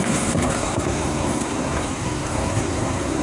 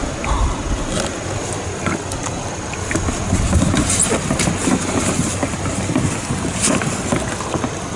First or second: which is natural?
second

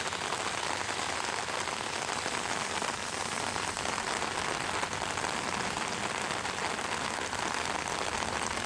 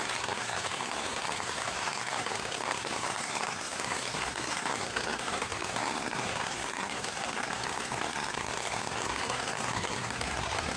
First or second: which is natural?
first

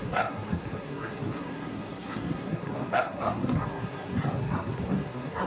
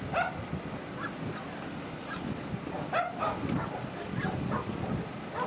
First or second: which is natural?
second